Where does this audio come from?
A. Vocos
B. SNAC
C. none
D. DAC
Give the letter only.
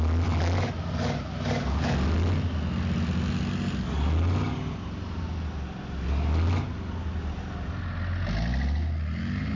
C